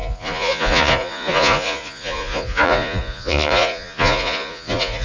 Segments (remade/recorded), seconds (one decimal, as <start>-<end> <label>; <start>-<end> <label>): 0.0-5.0 remade